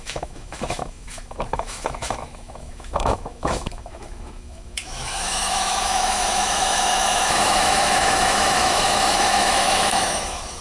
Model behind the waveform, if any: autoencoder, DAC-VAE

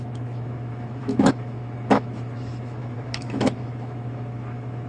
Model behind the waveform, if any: autoencoder, DAC-VAE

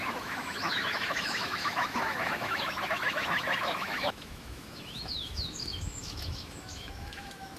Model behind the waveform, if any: autoencoder, DAC-VAE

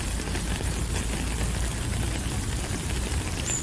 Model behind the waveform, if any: none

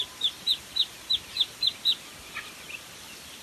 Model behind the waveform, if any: none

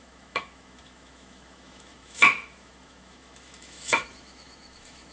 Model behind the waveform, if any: autoencoder, DAC-VAE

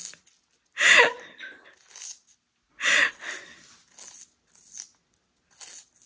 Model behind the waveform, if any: none